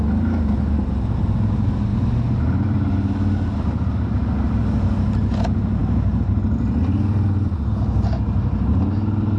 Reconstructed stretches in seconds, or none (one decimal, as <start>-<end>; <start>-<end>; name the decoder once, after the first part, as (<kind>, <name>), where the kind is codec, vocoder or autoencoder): none